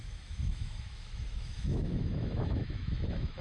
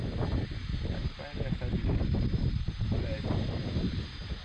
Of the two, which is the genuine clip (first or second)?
second